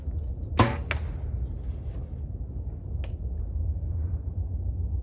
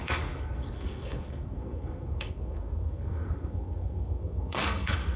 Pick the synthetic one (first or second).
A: second